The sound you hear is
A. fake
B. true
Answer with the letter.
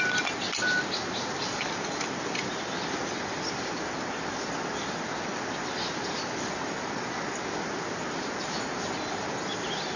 B